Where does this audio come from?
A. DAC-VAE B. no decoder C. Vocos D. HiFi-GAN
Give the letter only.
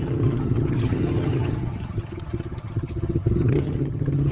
D